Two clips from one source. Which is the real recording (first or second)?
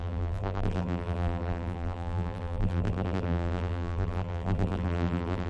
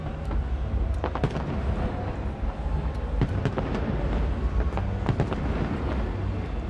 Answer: second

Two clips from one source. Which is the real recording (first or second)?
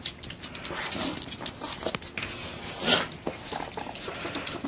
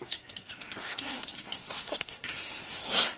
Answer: first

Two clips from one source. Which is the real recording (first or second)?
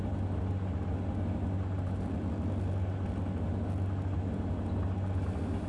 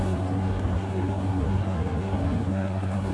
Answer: first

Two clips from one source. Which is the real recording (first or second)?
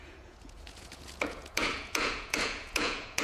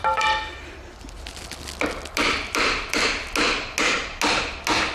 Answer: second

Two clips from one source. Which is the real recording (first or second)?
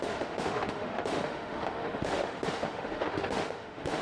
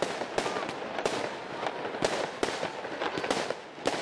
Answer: second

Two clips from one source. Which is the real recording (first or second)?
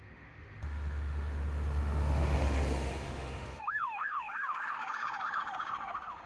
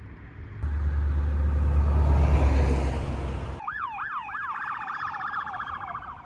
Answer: second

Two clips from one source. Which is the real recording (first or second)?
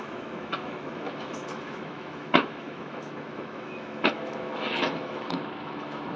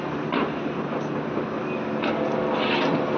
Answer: second